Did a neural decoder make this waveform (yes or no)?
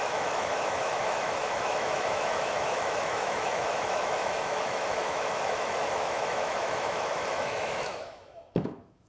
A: yes